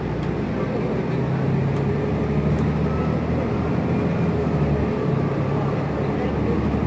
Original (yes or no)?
yes